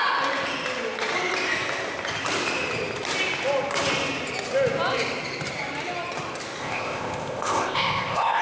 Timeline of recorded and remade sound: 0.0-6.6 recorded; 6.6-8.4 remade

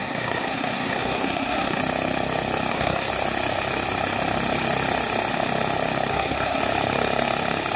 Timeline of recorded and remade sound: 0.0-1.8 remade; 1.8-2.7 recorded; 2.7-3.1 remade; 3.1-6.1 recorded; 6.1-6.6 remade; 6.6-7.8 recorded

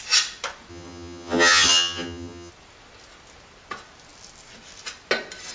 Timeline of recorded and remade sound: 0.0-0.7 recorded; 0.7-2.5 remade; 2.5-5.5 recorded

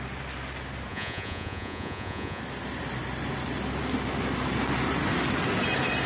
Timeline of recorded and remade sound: 0.0-0.9 recorded; 0.9-2.4 remade; 2.4-6.1 recorded

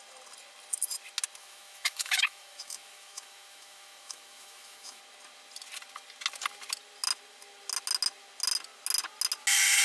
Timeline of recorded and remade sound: 0.0-1.4 recorded; 1.4-5.0 remade; 5.0-9.8 recorded

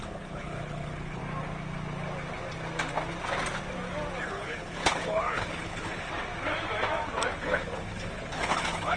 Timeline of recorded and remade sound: 0.0-1.2 remade; 1.2-4.2 recorded; 4.2-6.1 remade; 6.1-7.4 recorded; 7.4-9.0 remade

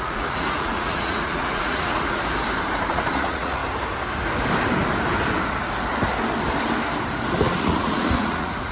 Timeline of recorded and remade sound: 0.0-2.2 remade; 2.2-2.9 recorded; 2.9-3.6 remade; 3.6-7.4 recorded; 7.4-8.7 remade